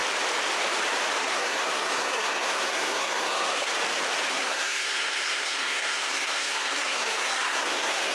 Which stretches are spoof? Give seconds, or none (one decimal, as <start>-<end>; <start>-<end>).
1.2-3.7; 4.3-8.1